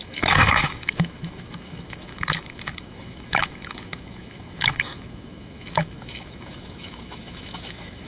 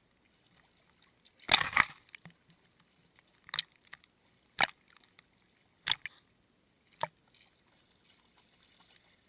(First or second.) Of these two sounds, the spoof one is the first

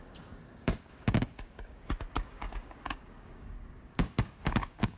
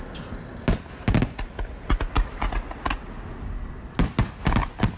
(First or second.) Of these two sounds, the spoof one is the first